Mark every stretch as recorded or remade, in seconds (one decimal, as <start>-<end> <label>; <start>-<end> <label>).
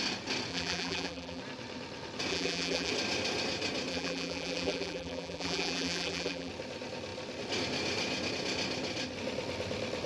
0.0-0.5 recorded; 0.5-1.4 remade; 1.4-2.3 recorded; 2.3-2.9 remade; 2.9-3.9 recorded; 3.9-6.5 remade; 6.5-10.1 recorded